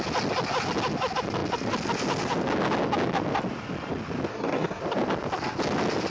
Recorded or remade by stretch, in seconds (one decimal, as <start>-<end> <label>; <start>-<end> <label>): 0.0-4.3 recorded; 4.3-4.8 remade; 4.8-6.1 recorded

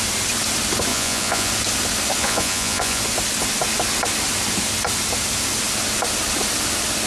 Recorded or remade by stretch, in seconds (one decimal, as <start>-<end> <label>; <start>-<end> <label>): 0.0-0.9 recorded; 0.9-1.5 remade; 1.5-2.2 recorded; 2.2-3.0 remade; 3.0-7.1 recorded

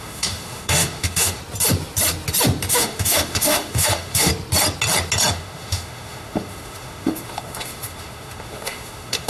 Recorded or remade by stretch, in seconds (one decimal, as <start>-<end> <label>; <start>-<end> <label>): 0.0-1.4 remade; 1.4-2.7 recorded; 2.7-4.3 remade; 4.3-5.3 recorded; 5.3-9.3 remade